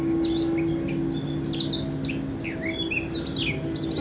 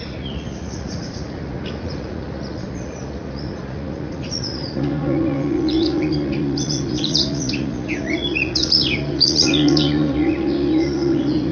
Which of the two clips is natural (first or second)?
first